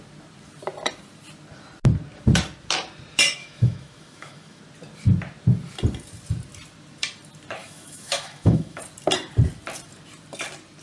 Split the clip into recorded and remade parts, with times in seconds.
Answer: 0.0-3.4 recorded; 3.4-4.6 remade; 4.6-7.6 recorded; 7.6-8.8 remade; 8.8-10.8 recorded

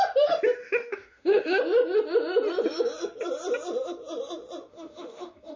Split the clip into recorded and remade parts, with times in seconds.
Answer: 0.0-0.6 recorded; 0.6-1.6 remade; 1.6-4.7 recorded; 4.7-5.6 remade

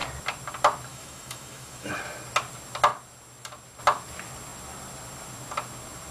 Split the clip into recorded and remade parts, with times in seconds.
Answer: 0.0-0.9 recorded; 0.9-2.0 remade; 2.0-6.1 recorded

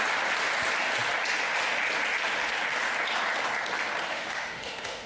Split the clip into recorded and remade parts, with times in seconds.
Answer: 0.0-4.1 recorded; 4.1-5.1 remade

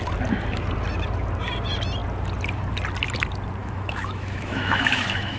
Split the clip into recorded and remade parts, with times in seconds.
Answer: 0.0-3.6 recorded; 3.6-5.4 remade

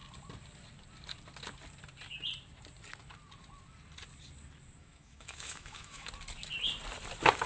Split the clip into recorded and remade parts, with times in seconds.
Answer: 0.0-4.8 recorded; 4.8-6.1 remade; 6.1-7.5 recorded